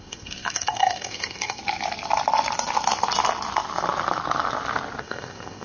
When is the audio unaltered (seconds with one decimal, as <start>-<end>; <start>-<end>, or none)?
1.6-5.0